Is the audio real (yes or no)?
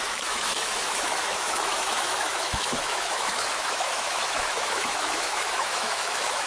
no